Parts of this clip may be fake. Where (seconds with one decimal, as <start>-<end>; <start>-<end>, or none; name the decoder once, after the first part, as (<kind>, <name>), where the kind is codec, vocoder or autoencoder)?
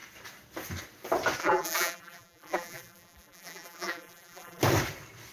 1.4-4.6 (vocoder, BigVGAN v2)